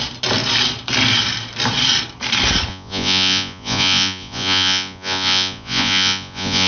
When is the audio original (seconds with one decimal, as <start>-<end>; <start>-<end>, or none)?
0.0-2.7